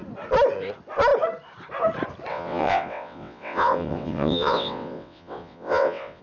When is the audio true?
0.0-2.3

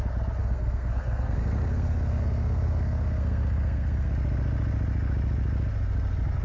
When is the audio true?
0.0-0.4; 4.1-6.4

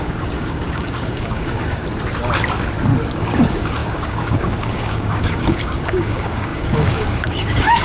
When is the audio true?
1.8-3.1

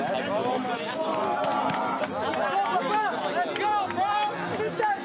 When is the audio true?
0.0-5.0

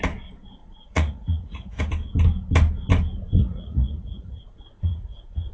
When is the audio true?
0.0-0.6; 1.8-3.4

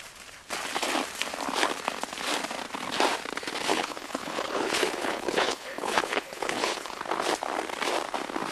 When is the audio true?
0.0-3.7; 7.0-8.5

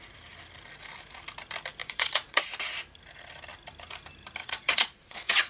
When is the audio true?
0.0-1.8; 2.4-4.4

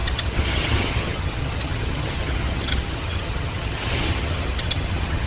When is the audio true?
none